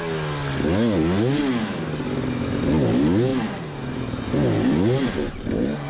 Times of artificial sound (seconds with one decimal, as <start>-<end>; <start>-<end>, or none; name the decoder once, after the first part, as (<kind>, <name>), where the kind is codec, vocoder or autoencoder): 3.3-5.9 (vocoder, BigVGAN v2)